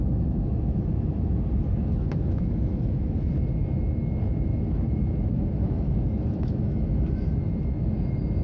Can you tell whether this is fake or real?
fake